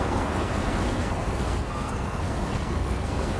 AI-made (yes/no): yes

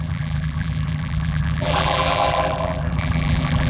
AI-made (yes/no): yes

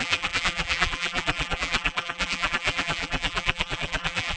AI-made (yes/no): yes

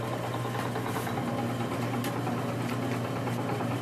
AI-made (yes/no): no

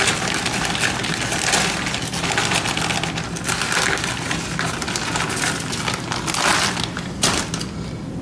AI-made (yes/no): no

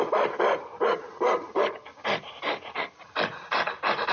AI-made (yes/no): no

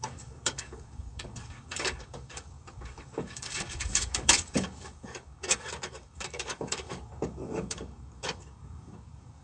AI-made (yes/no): yes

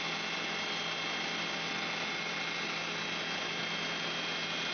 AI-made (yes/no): no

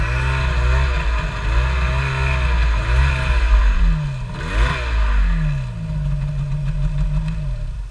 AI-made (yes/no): no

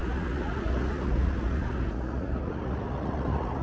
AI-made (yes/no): yes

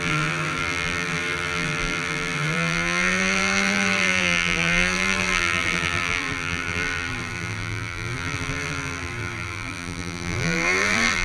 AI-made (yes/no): yes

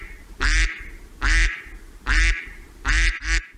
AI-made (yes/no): no